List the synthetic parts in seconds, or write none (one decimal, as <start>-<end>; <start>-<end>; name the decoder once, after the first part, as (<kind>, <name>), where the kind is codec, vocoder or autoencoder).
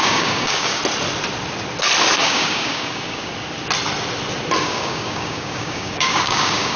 0.0-0.8 (codec, DAC); 2.2-3.3; 4.6-6.8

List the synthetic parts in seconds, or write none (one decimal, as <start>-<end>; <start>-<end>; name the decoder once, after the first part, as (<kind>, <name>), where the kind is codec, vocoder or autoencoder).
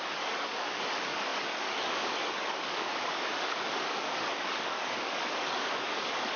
0.0-6.4 (codec, DAC)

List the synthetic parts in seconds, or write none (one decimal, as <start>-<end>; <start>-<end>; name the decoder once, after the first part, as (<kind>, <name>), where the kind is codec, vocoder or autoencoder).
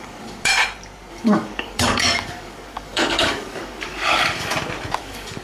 0.0-0.5 (codec, DAC); 1.1-4.5; 5.0-5.4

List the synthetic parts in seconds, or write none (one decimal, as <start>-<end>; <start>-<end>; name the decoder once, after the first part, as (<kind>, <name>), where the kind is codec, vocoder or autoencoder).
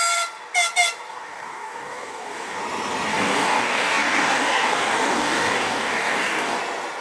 1.1-2.6 (codec, DAC); 3.1-6.6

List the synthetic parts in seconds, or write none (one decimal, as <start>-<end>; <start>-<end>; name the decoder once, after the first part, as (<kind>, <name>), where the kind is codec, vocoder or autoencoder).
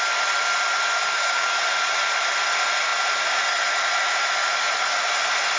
1.0-1.6 (codec, DAC)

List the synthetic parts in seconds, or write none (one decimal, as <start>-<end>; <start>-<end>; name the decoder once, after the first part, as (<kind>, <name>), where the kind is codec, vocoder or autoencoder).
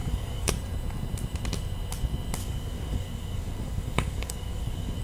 0.0-0.5 (codec, DAC); 2.4-5.0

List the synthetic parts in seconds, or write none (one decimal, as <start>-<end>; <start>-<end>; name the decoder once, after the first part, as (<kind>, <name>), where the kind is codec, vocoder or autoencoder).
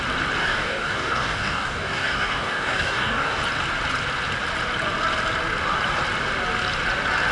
0.4-3.4 (codec, DAC)